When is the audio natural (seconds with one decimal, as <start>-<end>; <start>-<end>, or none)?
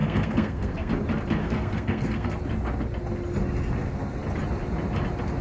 0.9-1.4; 2.3-5.4